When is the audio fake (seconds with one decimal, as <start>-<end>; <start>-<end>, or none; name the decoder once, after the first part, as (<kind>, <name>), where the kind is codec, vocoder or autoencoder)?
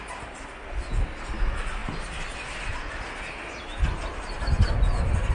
none